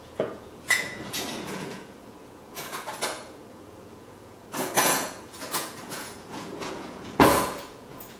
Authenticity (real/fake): fake